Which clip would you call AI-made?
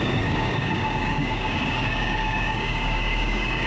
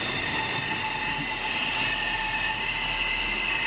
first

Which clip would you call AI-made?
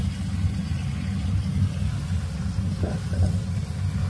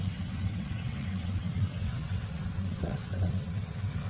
second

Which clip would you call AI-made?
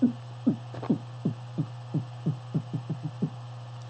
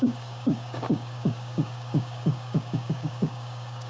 second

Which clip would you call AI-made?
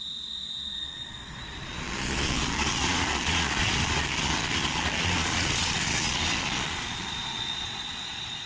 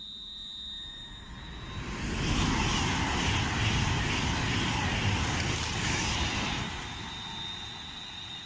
first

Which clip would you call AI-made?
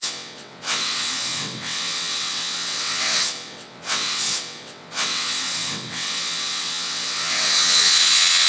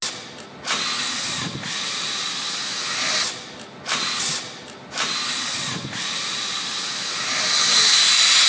first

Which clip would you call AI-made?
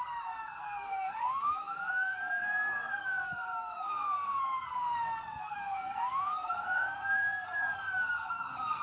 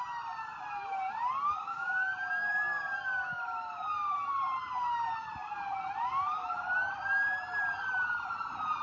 first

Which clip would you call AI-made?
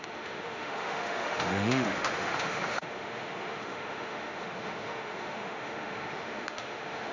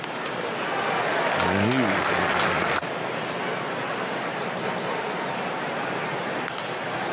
first